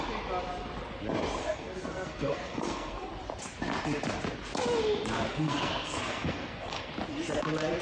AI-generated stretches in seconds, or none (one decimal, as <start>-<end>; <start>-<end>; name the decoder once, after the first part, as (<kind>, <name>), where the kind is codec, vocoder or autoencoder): 1.4-3.1 (codec, SNAC); 5.3-6.9